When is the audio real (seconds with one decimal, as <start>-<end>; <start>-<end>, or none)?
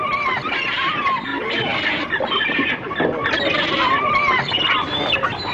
none